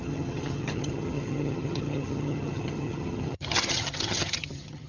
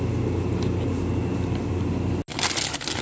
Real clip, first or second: second